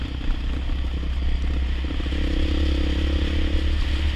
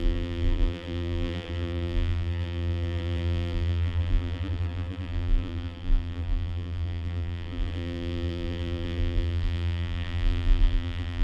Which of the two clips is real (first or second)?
first